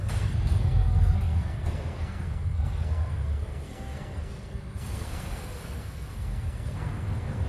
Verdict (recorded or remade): remade